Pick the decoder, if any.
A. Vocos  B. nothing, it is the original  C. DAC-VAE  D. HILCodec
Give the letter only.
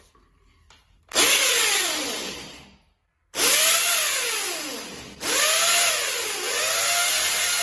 B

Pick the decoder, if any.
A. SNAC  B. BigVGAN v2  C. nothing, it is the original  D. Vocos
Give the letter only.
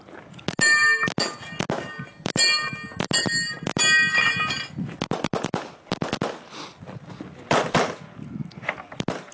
C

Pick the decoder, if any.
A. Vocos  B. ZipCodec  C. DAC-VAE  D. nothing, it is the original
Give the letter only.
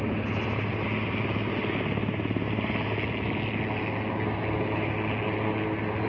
D